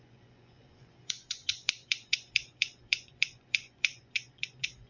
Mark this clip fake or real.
fake